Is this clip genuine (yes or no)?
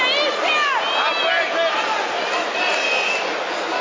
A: yes